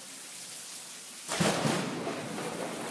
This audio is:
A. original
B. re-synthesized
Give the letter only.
A